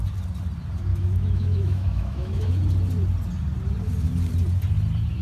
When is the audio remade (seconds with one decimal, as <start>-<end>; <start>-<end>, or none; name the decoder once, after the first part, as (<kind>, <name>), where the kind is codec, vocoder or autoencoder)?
0.9-2.5 (autoencoder, DAC-VAE)